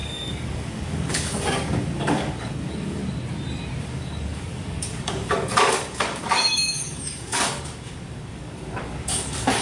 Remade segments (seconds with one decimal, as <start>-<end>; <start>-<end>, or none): 0.0-3.0; 3.8-9.6